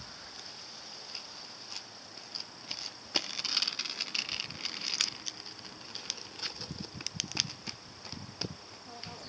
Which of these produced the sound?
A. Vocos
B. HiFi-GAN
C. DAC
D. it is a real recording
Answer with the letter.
D